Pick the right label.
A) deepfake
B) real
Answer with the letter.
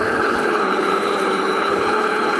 A